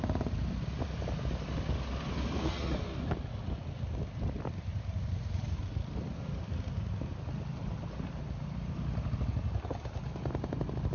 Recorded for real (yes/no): yes